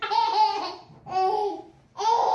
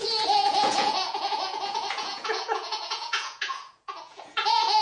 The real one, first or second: first